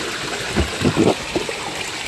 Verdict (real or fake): real